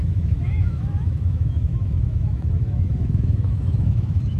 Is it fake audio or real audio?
fake